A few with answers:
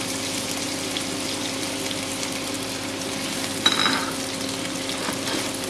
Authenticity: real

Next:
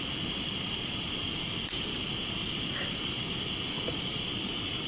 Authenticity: real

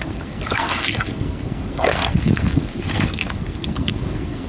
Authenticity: fake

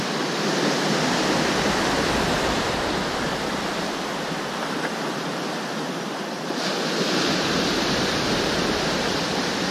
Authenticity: fake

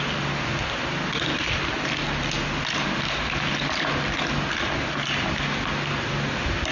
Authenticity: real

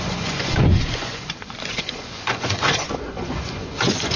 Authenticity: fake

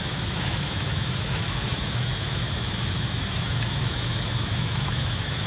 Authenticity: fake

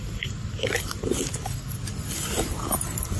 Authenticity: real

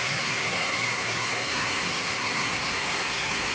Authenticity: fake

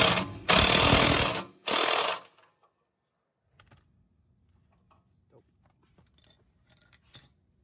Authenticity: real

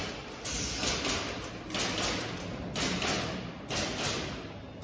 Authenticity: real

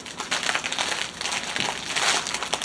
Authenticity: real